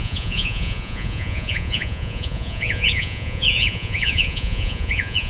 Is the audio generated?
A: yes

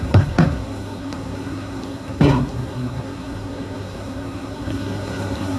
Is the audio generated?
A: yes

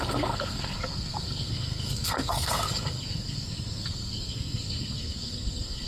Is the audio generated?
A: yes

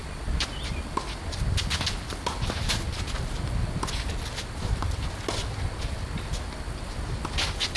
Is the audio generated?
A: no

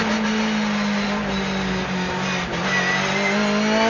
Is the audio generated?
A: no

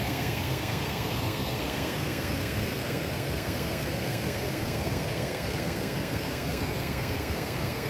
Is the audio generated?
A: yes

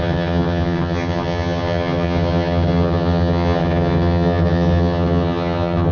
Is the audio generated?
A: yes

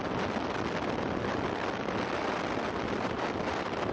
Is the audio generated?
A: no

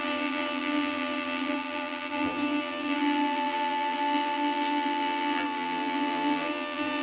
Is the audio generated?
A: yes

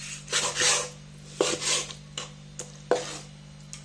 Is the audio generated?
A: no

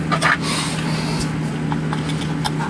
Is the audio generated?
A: no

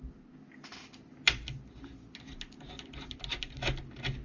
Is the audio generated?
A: no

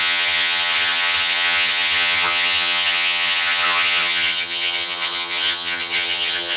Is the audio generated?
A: yes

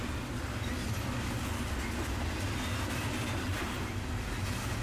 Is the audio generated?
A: no